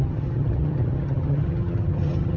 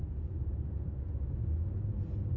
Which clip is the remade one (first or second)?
first